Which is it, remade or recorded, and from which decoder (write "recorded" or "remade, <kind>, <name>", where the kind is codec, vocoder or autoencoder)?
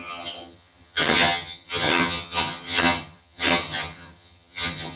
remade, vocoder, HiFi-GAN